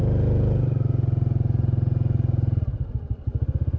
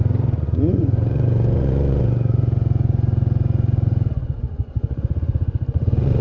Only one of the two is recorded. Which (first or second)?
first